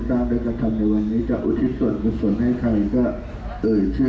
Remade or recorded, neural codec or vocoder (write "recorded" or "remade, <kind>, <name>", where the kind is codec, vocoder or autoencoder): recorded